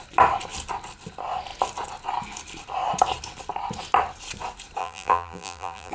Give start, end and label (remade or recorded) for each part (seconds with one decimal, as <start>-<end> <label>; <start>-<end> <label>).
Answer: 0.0-4.8 recorded; 4.8-5.9 remade